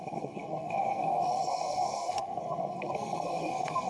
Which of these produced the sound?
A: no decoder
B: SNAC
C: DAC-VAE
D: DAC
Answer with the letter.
B